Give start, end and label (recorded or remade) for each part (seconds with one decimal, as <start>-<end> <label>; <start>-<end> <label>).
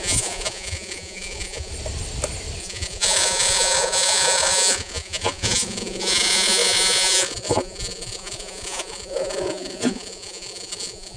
0.0-1.7 remade; 1.7-2.6 recorded; 2.6-11.2 remade